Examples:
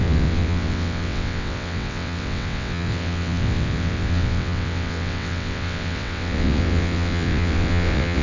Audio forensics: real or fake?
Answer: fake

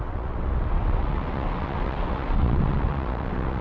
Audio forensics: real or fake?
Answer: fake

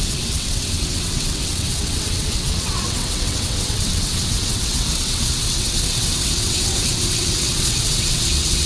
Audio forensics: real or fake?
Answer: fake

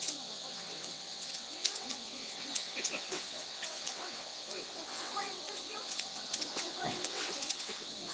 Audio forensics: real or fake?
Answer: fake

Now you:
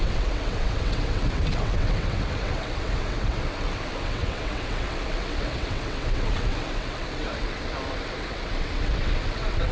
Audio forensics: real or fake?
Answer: fake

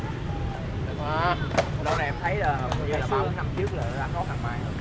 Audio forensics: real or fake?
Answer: real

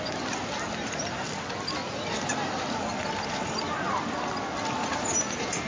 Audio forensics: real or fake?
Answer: real